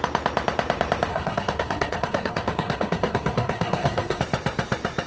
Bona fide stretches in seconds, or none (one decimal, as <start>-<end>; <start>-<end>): 0.0-1.1; 4.2-5.1